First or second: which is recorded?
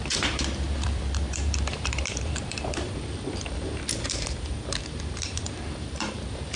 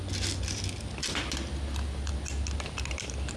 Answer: second